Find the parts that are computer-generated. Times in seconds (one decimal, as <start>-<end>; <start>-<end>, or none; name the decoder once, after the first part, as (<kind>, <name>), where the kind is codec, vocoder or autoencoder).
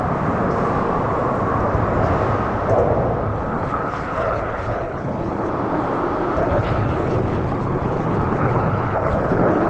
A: 3.3-5.5 (codec, HILCodec); 6.4-9.7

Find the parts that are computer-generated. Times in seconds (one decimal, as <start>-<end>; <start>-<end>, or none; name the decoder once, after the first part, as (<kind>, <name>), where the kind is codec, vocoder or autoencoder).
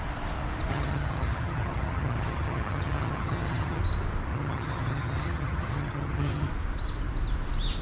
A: 0.7-3.8 (vocoder, HiFi-GAN); 4.3-6.5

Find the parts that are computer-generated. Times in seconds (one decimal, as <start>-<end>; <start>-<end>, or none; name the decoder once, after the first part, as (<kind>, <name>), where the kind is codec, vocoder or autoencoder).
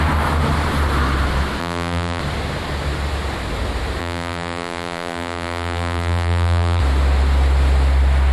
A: 1.6-2.2 (vocoder, BigVGAN v2); 4.0-6.8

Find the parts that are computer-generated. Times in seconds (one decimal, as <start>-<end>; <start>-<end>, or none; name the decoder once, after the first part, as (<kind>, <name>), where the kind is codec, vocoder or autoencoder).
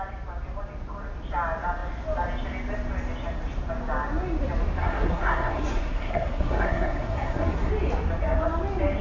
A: 4.8-7.7 (codec, SNAC)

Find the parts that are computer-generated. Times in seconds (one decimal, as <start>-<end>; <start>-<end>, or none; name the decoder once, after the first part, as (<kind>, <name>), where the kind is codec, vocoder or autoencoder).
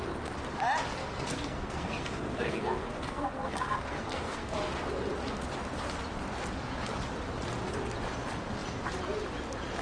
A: 1.0-4.6 (codec, SNAC)